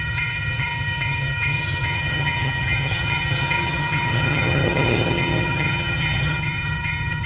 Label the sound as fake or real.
fake